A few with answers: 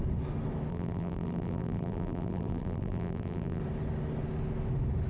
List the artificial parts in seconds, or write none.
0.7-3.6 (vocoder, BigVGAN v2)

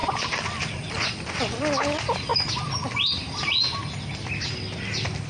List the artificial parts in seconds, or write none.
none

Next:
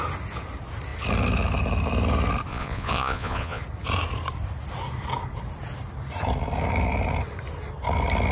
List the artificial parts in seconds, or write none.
2.5-3.6 (vocoder, Vocos)